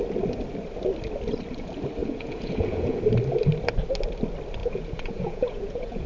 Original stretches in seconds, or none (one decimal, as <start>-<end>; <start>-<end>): 0.0-2.0; 3.0-4.6